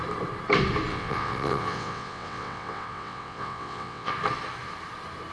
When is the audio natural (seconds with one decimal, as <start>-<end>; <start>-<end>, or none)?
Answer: 0.0-0.9; 4.1-5.3